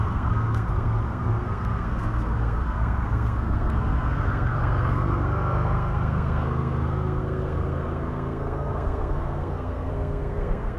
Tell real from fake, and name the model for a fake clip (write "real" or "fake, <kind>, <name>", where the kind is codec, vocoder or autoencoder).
fake, codec, SNAC